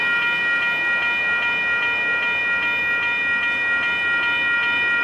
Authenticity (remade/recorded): recorded